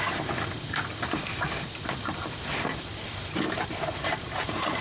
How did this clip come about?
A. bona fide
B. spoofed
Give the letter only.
A